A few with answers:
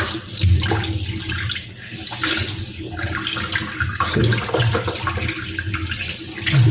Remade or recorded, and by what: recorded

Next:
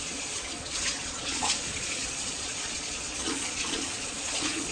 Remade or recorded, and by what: remade, vocoder, Vocos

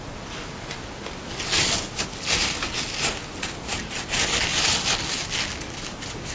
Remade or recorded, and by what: recorded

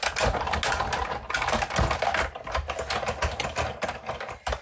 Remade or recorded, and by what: recorded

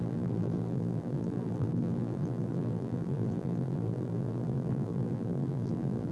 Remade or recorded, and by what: remade, vocoder, BigVGAN v2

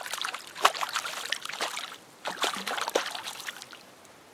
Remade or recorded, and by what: recorded